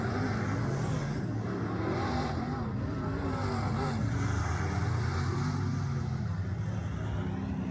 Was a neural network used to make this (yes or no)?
no